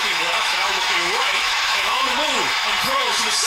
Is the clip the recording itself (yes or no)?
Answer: no